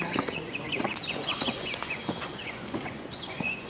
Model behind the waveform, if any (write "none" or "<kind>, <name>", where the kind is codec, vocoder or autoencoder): vocoder, Vocos